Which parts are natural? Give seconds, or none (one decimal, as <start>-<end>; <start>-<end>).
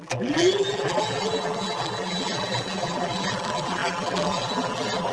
none